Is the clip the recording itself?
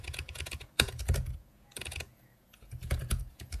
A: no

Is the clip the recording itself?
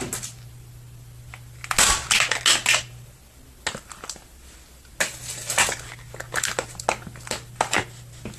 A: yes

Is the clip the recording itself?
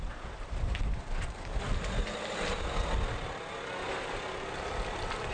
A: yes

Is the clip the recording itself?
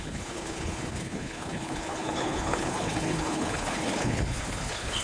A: no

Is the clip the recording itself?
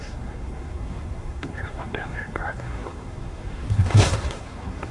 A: no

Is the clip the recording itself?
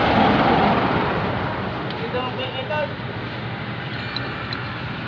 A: yes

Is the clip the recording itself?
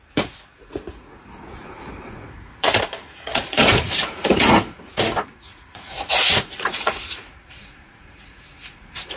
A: no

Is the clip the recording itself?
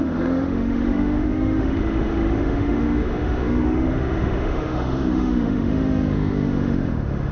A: no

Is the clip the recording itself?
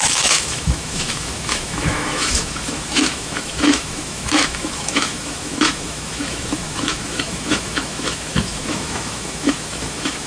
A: no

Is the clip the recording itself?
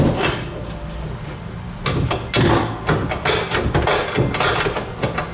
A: yes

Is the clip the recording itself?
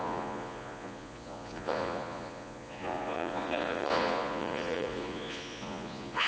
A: no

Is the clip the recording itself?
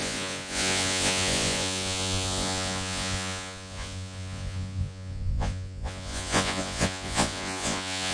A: no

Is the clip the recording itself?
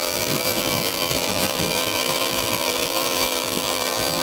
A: no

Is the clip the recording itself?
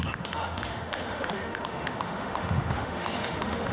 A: no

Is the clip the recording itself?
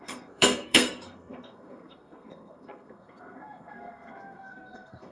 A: no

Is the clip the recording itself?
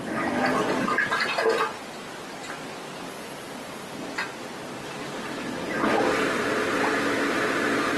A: yes